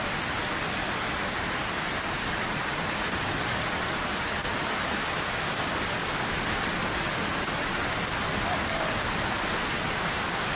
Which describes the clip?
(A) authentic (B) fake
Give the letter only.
A